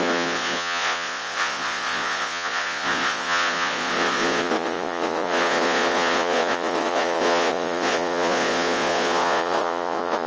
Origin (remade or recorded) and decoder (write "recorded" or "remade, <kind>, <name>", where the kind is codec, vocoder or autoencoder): remade, vocoder, Vocos